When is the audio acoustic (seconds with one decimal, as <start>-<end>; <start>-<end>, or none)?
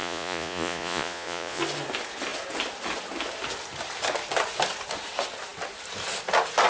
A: 1.6-6.7